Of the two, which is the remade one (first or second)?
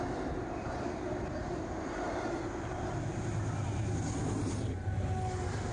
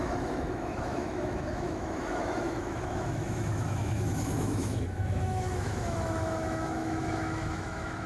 second